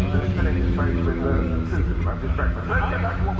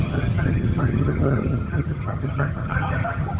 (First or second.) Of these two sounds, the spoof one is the second